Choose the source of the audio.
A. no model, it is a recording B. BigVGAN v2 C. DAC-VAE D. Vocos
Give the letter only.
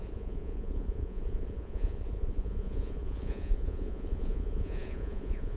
D